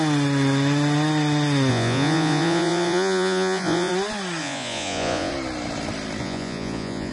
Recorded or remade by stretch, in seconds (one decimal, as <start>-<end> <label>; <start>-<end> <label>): 0.0-1.7 recorded; 1.7-3.9 remade; 3.9-4.4 recorded; 4.4-5.3 remade; 5.3-6.2 recorded; 6.2-7.1 remade